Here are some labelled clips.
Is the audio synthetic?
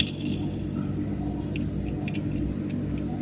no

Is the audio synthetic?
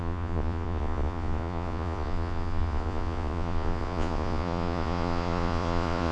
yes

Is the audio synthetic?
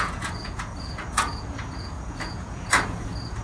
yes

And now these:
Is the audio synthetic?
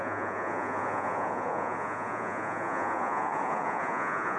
yes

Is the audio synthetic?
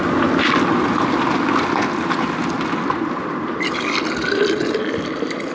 no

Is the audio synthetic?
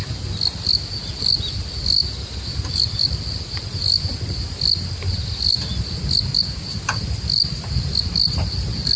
no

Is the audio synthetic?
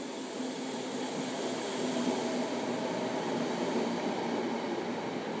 no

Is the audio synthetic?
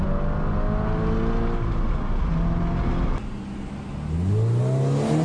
no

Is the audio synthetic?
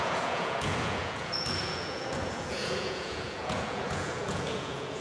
yes